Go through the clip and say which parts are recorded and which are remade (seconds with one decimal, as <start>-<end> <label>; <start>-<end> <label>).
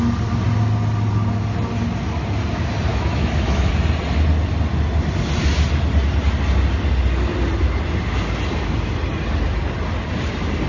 0.0-2.9 recorded; 2.9-3.7 remade; 3.7-10.7 recorded